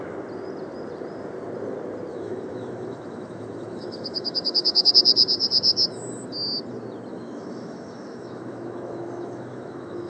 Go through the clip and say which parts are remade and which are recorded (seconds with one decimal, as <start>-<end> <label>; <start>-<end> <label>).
0.0-2.1 recorded; 2.1-4.9 remade; 4.9-7.1 recorded; 7.1-10.1 remade